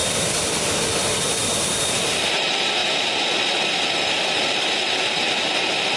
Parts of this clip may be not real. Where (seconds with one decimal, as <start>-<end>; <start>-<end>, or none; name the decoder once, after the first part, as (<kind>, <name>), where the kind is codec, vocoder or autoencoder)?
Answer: 0.0-6.0 (vocoder, BigVGAN v2)